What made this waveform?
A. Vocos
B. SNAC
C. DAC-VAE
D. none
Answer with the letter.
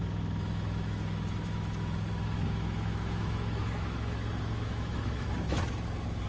C